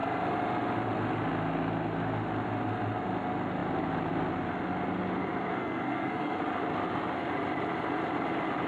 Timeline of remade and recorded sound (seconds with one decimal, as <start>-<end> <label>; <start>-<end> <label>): 0.0-5.5 recorded; 5.5-6.4 remade; 6.4-8.7 recorded